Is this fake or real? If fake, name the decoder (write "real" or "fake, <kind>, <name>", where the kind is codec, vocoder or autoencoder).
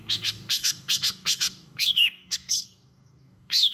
fake, codec, DAC